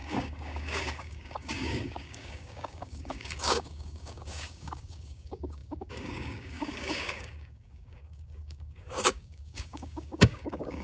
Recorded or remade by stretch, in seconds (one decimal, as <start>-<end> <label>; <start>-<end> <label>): 0.0-10.8 remade